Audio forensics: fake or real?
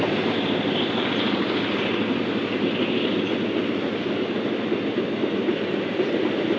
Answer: real